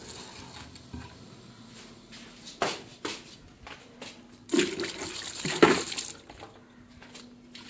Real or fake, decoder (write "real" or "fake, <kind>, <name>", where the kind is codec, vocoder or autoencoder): real